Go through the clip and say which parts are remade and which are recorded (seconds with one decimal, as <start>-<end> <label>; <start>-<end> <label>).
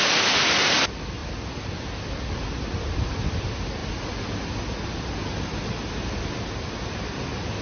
0.0-7.6 recorded